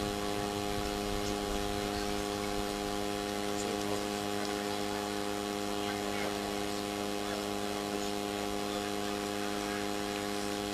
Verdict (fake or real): real